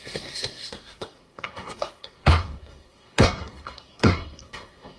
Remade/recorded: remade